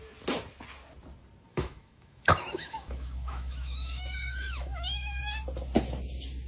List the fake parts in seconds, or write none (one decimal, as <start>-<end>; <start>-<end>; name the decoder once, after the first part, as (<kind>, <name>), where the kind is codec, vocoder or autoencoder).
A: 1.5-5.2 (autoencoder, DAC-VAE)